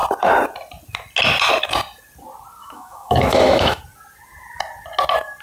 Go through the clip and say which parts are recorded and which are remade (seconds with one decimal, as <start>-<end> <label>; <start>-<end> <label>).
0.0-2.6 recorded; 2.6-3.8 remade; 3.8-5.4 recorded